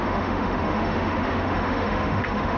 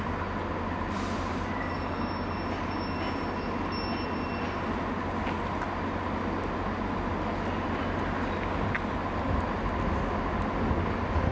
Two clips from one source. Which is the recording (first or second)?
second